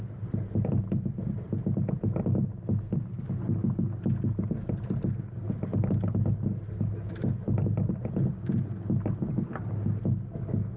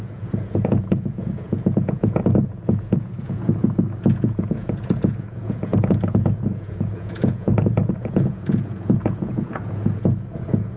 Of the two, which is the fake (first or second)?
second